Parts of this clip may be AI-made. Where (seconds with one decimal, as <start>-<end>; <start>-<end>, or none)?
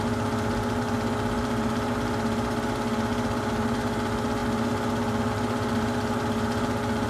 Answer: none